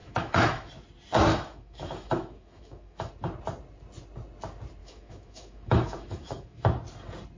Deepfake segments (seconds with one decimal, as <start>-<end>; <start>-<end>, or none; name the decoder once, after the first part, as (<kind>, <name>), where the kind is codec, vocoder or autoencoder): 0.0-0.7 (autoencoder, DAC-VAE); 1.3-3.1; 4.8-6.6